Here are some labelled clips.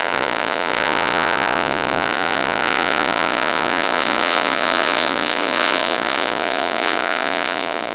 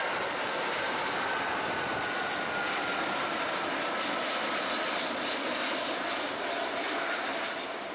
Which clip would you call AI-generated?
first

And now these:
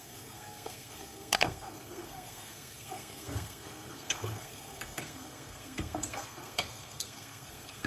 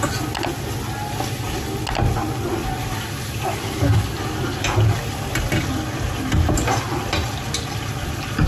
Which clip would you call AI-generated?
first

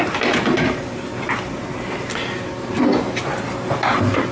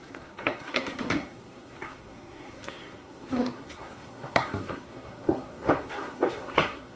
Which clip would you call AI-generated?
second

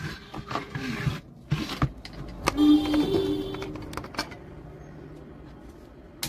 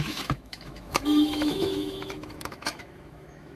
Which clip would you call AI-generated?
second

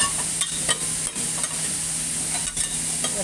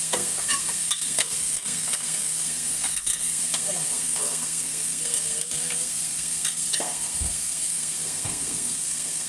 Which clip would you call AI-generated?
second